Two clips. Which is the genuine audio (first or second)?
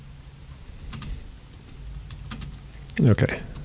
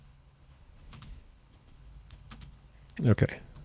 first